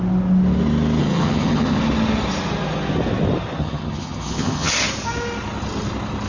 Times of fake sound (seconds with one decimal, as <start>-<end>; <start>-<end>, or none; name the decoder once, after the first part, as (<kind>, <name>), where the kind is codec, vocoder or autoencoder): 1.0-1.8 (vocoder, HiFi-GAN); 3.6-4.7